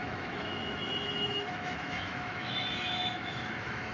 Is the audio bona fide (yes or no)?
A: no